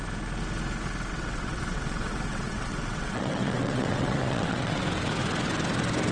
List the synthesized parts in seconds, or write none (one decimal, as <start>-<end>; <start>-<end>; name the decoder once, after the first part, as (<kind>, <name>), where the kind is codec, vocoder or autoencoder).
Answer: 1.1-4.8 (vocoder, WaveNeXt)